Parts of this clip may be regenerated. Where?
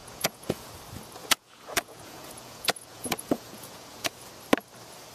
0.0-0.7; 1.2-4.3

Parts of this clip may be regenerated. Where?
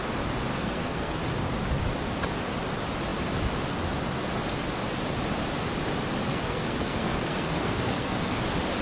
0.5-1.2; 6.3-8.4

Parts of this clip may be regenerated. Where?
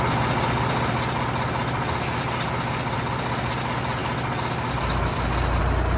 none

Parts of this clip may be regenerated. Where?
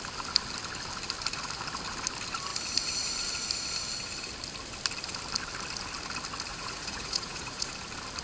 6.5-7.7